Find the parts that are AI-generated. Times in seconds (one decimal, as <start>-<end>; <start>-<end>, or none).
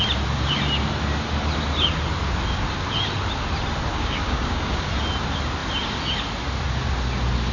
3.9-4.9